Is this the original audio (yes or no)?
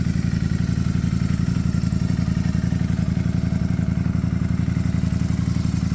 yes